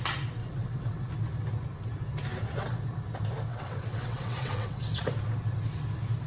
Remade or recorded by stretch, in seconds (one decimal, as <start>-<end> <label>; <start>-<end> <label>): 0.0-0.4 recorded; 0.4-1.1 remade; 1.1-3.5 recorded; 3.5-4.8 remade; 4.8-6.3 recorded